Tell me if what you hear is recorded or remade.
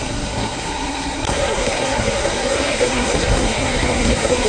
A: remade